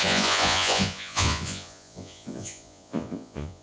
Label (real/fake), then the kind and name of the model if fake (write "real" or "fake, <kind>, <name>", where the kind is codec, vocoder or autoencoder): fake, vocoder, Vocos